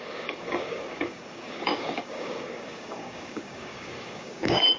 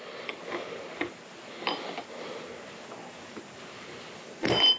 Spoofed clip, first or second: first